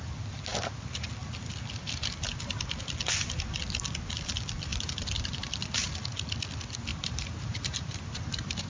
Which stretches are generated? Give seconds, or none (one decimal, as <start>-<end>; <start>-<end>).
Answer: 4.7-5.6; 6.9-8.7